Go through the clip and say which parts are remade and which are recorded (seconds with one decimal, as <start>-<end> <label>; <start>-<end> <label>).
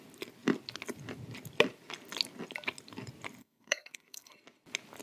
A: 0.0-3.4 recorded; 3.4-4.3 remade; 4.3-5.0 recorded